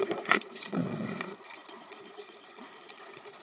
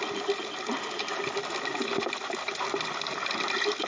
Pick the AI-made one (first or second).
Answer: first